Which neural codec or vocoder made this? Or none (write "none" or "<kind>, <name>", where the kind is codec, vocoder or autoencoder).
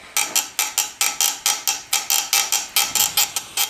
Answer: none